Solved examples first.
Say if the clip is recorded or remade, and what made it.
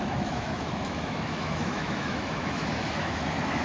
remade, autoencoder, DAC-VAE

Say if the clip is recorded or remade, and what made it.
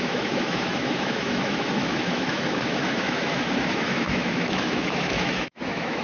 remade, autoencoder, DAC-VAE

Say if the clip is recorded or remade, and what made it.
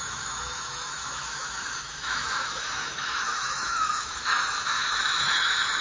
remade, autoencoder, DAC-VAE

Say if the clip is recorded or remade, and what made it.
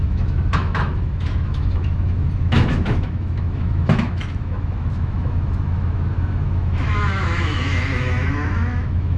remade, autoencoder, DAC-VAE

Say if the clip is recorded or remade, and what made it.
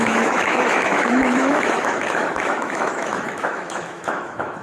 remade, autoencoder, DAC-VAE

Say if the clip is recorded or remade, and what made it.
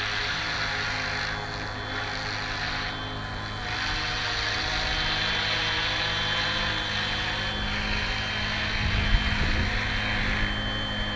recorded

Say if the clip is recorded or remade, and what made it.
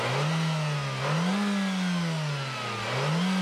recorded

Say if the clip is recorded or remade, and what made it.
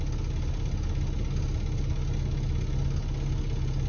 recorded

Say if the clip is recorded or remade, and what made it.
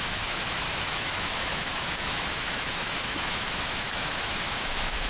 remade, autoencoder, DAC-VAE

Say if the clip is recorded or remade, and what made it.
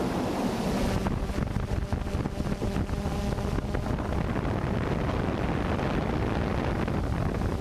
recorded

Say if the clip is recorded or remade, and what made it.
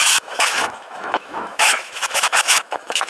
remade, autoencoder, DAC-VAE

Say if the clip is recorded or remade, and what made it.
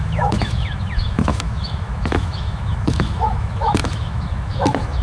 remade, autoencoder, DAC-VAE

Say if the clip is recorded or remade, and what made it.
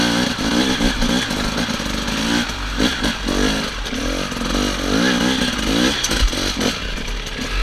recorded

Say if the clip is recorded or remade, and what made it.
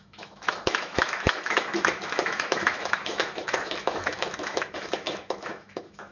remade, autoencoder, DAC-VAE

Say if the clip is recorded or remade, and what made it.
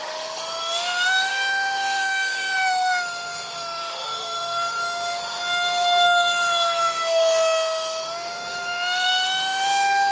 remade, autoencoder, DAC-VAE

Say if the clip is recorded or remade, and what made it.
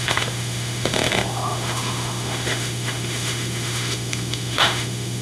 remade, autoencoder, DAC-VAE